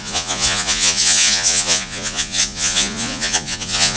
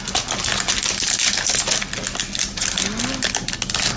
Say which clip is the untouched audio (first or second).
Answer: second